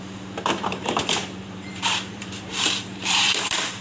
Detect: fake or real fake